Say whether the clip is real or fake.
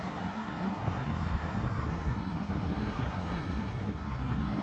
fake